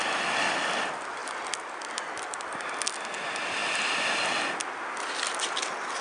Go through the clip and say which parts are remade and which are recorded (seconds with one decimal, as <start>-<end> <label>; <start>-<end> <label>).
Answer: 0.0-6.0 recorded